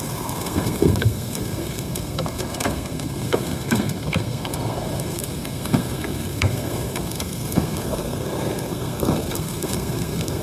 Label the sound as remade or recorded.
remade